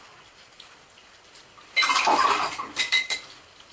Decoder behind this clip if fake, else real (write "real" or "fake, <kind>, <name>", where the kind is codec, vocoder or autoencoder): real